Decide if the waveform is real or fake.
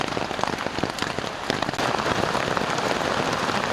real